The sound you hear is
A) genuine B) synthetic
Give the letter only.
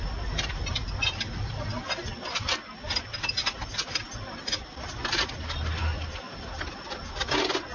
A